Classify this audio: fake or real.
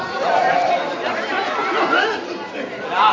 real